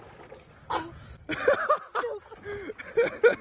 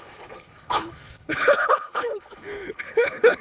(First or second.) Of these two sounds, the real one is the first